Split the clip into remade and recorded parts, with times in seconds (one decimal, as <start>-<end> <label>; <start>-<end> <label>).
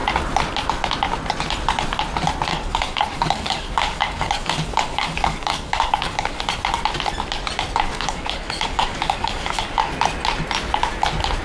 0.0-2.5 recorded; 2.5-6.4 remade; 6.4-7.9 recorded; 7.9-9.9 remade; 9.9-11.4 recorded